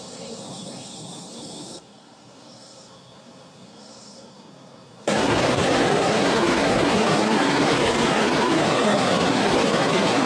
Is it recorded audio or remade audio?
remade